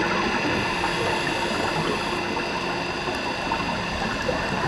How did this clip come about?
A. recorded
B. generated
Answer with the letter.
A